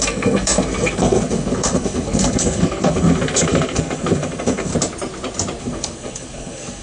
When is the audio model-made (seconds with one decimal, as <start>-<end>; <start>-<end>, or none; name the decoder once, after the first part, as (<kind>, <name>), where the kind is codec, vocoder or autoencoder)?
0.0-4.7 (codec, SNAC); 5.6-6.8